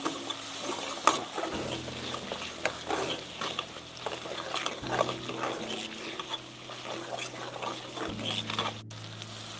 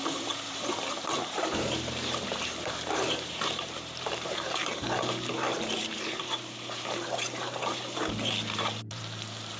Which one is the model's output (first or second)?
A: second